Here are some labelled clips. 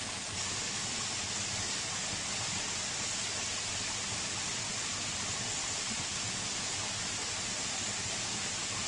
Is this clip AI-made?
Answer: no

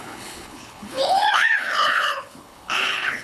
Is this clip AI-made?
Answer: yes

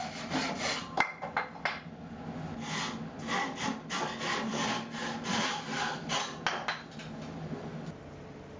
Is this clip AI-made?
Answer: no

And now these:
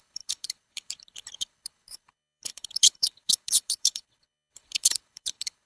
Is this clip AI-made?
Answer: yes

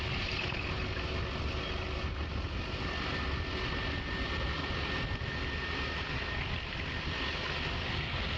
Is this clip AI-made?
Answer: no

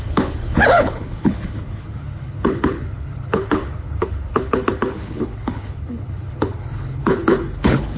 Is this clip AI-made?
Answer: yes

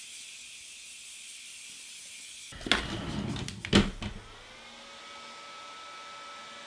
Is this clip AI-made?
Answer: no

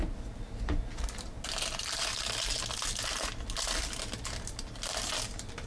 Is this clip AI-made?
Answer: no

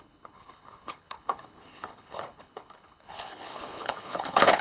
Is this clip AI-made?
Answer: yes